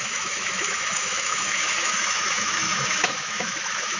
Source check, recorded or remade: remade